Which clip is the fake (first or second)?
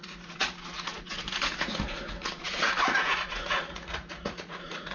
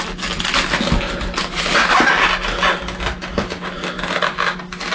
first